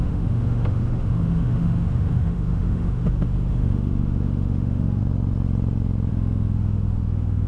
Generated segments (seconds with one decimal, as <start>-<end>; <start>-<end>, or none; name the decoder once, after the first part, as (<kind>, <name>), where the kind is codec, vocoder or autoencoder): 0.0-5.0 (autoencoder, DAC-VAE); 6.1-7.5